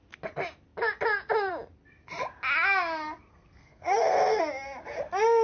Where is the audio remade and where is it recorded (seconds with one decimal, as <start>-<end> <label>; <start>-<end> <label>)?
0.0-3.3 recorded; 3.3-4.4 remade; 4.4-5.4 recorded